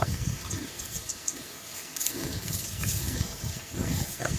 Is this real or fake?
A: fake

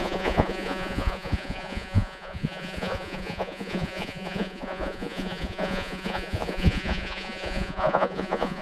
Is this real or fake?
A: fake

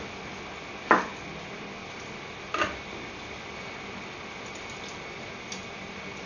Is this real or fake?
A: real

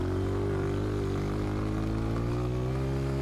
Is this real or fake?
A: real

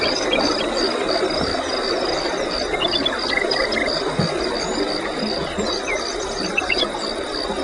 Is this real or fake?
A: real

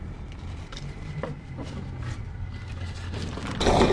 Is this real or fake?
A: fake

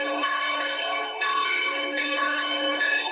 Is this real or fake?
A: fake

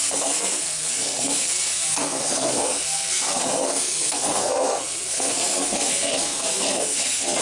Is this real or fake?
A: fake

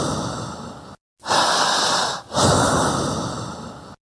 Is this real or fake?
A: real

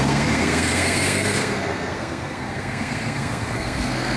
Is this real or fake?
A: fake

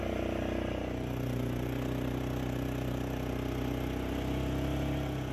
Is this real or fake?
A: real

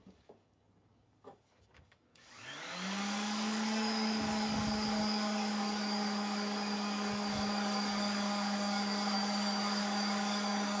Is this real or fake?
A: fake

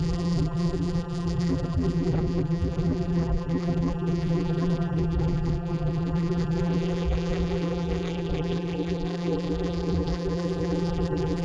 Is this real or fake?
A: fake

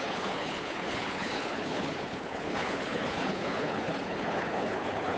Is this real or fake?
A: fake